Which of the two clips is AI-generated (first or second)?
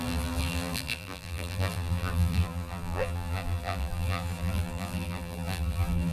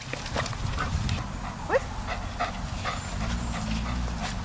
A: first